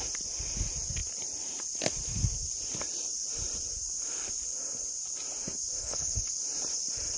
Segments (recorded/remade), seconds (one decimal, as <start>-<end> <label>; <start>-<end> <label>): 0.0-5.8 recorded; 5.8-6.3 remade; 6.3-7.2 recorded